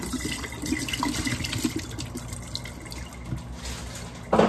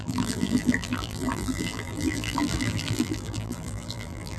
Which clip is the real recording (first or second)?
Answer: first